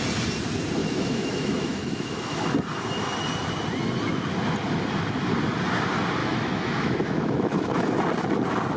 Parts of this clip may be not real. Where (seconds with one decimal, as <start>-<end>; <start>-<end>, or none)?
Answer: 0.8-2.5; 6.2-7.9